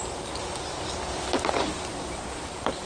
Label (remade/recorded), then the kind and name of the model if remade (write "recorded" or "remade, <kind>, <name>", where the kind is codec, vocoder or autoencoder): recorded